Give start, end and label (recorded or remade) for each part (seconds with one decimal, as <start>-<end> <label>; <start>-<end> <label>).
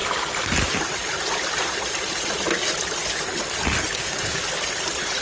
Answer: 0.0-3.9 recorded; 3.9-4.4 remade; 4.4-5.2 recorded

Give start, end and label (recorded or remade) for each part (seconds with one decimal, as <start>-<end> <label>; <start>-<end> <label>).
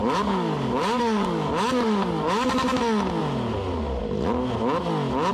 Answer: 0.0-2.8 remade; 2.8-5.3 recorded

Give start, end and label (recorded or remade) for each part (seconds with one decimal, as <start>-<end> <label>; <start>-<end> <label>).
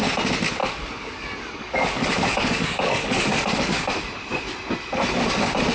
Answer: 0.0-0.6 recorded; 0.6-4.0 remade; 4.0-5.7 recorded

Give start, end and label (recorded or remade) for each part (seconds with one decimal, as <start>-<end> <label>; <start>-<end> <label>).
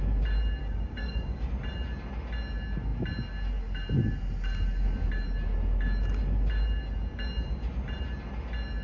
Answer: 0.0-0.6 recorded; 0.6-1.5 remade; 1.5-8.8 recorded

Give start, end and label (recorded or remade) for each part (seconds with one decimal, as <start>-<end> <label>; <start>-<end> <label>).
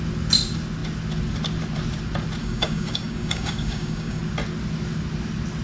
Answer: 0.0-2.4 recorded; 2.4-4.2 remade; 4.2-5.6 recorded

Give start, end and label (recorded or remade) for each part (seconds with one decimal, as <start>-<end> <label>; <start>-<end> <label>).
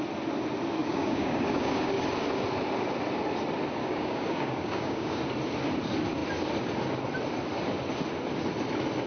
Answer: 0.0-0.8 recorded; 0.8-1.9 remade; 1.9-3.8 recorded; 3.8-5.2 remade; 5.2-9.1 recorded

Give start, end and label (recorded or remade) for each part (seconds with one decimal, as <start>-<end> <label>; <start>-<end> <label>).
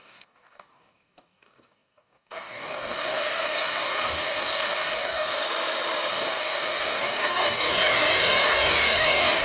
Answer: 0.0-5.4 remade; 5.4-6.1 recorded; 6.1-9.4 remade